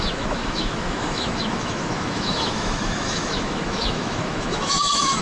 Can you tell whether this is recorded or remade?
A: remade